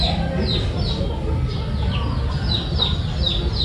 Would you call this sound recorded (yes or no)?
yes